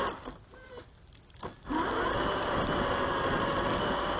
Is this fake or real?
real